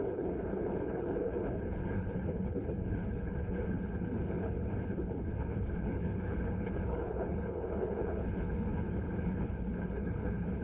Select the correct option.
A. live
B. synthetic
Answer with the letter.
B